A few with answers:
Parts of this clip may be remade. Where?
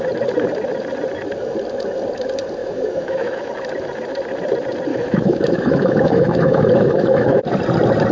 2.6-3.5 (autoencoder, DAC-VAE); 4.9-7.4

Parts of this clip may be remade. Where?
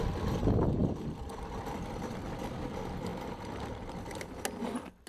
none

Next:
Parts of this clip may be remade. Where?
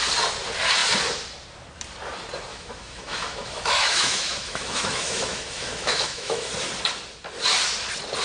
2.5-6.5 (autoencoder, DAC-VAE)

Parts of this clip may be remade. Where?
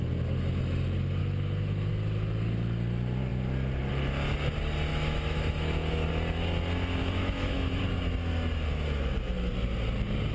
1.2-1.9 (autoencoder, DAC-VAE); 4.9-6.1; 7.0-7.8